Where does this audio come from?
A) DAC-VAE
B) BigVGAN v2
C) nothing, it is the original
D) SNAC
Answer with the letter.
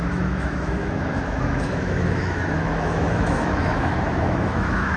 A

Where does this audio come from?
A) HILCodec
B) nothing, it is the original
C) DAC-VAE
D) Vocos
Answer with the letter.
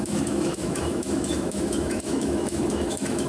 C